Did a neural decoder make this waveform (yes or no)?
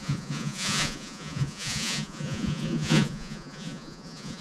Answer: yes